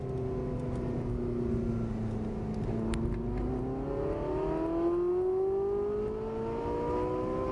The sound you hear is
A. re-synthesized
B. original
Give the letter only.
B